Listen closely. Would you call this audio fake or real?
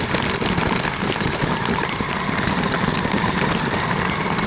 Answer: real